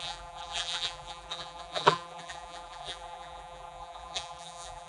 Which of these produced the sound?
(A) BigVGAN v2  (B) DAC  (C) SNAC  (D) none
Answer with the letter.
A